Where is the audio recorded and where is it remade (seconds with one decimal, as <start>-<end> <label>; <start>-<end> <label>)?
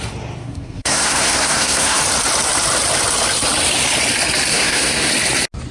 0.0-0.4 recorded; 0.4-2.0 remade; 2.0-4.5 recorded; 4.5-5.1 remade; 5.1-5.7 recorded